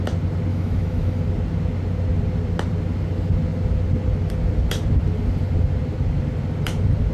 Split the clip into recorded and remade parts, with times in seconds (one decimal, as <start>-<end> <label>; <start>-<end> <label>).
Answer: 0.0-0.5 recorded; 0.5-1.2 remade; 1.2-7.1 recorded